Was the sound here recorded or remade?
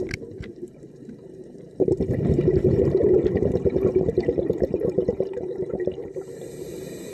remade